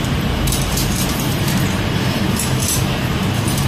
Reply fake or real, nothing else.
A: fake